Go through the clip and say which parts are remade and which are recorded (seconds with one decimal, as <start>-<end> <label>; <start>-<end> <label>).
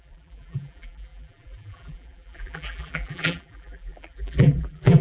0.0-5.0 remade